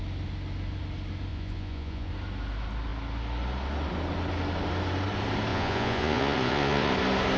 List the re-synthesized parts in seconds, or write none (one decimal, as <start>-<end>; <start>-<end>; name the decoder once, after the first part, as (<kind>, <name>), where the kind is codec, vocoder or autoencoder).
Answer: 1.3-2.1 (vocoder, Vocos); 5.5-6.9